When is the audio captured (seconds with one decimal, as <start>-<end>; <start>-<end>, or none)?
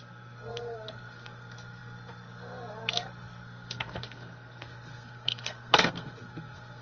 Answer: none